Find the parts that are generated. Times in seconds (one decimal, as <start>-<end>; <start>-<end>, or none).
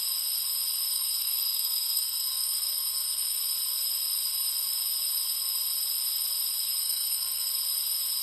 0.9-3.4; 6.8-7.5